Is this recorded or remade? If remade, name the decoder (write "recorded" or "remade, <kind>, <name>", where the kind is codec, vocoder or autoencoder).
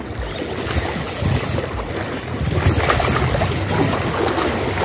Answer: recorded